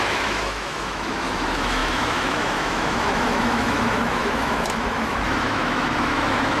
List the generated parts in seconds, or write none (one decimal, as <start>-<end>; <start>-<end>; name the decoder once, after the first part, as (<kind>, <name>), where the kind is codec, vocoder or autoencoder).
0.0-6.6 (autoencoder, DAC-VAE)